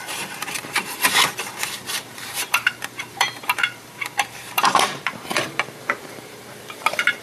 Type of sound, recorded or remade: remade